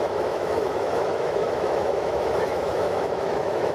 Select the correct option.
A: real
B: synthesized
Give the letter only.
B